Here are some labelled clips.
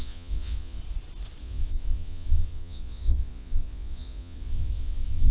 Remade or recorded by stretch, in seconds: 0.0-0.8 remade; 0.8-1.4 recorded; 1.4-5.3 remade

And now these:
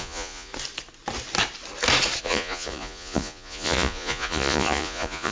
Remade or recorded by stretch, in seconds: 0.0-0.5 remade; 0.5-2.2 recorded; 2.2-5.3 remade